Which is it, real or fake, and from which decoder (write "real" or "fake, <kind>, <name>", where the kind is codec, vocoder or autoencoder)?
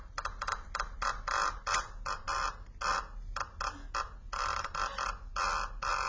real